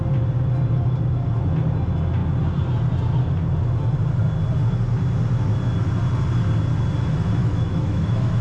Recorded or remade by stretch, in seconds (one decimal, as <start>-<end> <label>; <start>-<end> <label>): 0.0-7.4 recorded; 7.4-8.4 remade